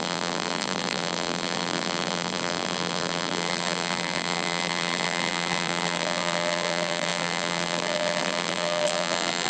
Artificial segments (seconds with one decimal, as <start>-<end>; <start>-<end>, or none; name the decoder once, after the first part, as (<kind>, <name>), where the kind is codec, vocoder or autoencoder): 0.0-9.5 (vocoder, BigVGAN v2)